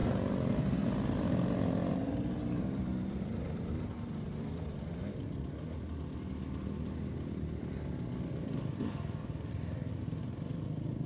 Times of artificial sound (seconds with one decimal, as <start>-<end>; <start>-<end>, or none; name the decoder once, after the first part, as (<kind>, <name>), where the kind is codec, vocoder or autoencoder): none